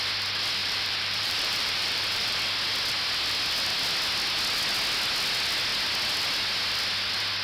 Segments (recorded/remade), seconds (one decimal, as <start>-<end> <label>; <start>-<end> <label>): 0.0-0.6 recorded; 0.6-2.4 remade; 2.4-7.4 recorded